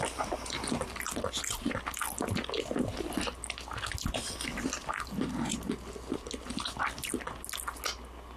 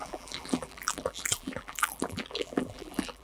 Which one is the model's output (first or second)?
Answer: second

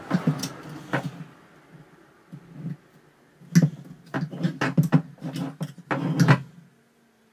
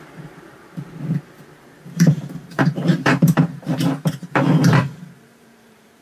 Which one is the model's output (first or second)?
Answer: second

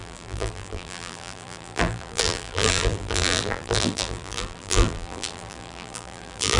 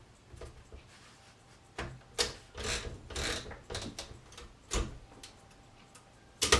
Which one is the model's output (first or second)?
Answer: first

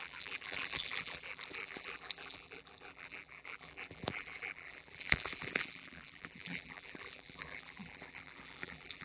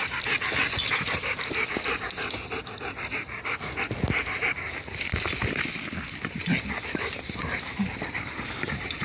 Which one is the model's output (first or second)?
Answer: first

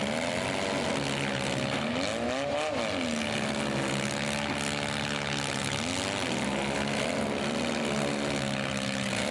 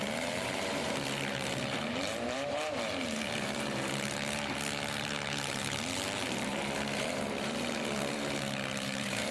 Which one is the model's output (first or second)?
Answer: second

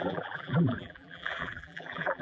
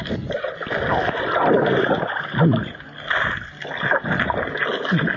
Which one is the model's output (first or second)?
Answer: first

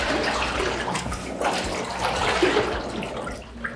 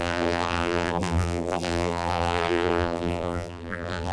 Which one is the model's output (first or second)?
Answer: second